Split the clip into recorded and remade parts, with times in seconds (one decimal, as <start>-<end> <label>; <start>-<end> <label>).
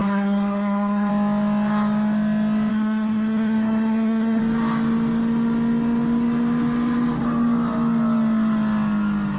0.0-1.1 remade; 1.1-2.7 recorded; 2.7-4.4 remade; 4.4-9.4 recorded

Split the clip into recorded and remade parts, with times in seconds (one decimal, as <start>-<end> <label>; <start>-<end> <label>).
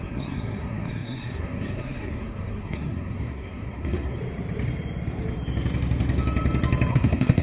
0.0-4.2 remade; 4.2-6.9 recorded; 6.9-7.4 remade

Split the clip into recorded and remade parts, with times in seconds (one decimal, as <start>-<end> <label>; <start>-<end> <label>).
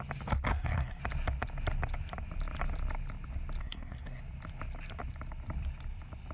0.0-0.5 recorded; 0.5-1.0 remade; 1.0-3.6 recorded; 3.6-4.2 remade; 4.2-6.3 recorded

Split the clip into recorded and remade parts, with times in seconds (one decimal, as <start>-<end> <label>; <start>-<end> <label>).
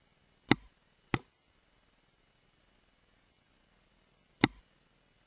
0.0-5.3 recorded